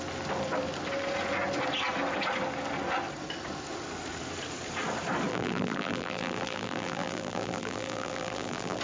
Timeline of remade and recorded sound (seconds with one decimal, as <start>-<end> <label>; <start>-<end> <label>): 0.0-5.3 recorded; 5.3-8.8 remade